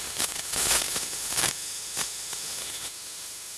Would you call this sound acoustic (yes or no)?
no